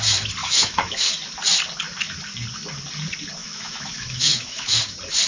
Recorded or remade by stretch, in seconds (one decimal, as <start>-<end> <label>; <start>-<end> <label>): 0.0-0.4 recorded; 0.4-1.1 remade; 1.1-3.4 recorded; 3.4-4.8 remade; 4.8-5.3 recorded